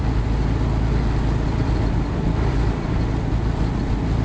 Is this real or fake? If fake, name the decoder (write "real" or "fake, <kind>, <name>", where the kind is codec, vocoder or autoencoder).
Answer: real